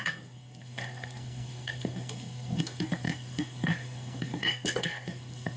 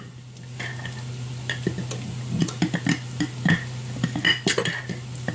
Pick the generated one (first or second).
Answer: first